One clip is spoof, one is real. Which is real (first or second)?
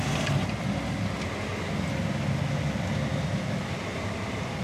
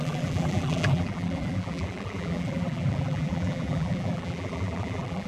first